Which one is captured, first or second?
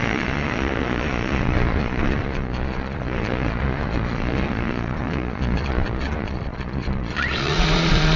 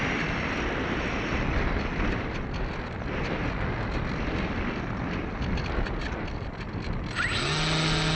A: second